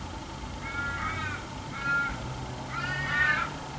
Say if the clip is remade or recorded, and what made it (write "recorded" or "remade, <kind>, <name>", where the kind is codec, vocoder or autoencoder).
remade, vocoder, BigVGAN v2